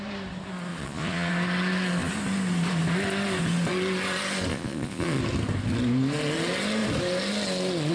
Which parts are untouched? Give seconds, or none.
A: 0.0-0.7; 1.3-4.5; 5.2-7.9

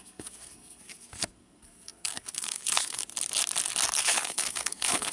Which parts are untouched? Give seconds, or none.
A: 3.0-4.0

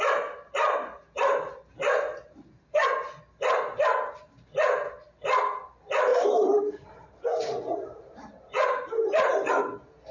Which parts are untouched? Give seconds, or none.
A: 0.0-6.1; 9.6-10.1

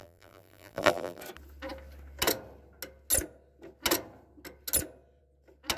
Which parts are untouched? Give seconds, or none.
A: 1.2-5.8

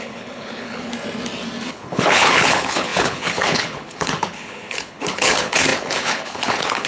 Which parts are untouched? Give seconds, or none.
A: 0.9-1.7

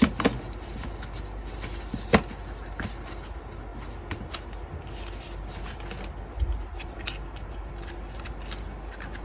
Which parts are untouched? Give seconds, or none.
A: 0.0-9.2